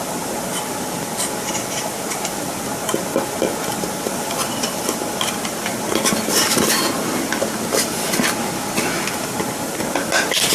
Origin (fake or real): real